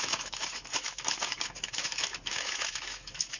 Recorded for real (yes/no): no